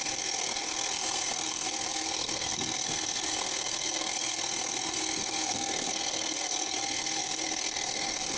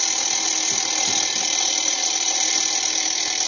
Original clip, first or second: second